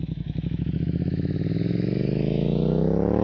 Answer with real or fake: fake